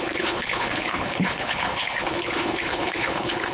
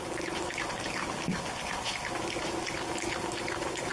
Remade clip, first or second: first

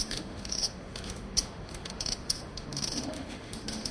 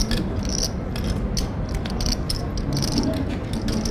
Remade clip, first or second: first